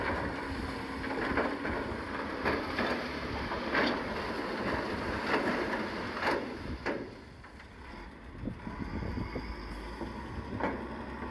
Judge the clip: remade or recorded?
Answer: recorded